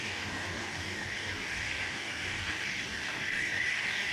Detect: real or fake fake